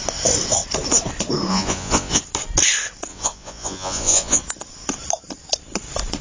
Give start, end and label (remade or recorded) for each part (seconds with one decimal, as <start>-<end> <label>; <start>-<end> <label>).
0.0-1.5 recorded; 1.5-2.2 remade; 2.2-3.1 recorded; 3.1-4.4 remade; 4.4-6.2 recorded